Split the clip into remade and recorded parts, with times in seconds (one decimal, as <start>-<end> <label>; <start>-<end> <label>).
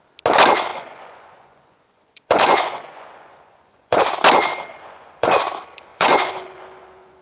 0.0-0.7 recorded; 0.7-4.0 remade; 4.0-4.7 recorded; 4.7-5.4 remade; 5.4-5.9 recorded; 5.9-7.2 remade